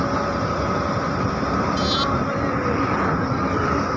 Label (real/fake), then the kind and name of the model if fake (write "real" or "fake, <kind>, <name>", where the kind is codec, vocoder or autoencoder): fake, vocoder, BigVGAN v2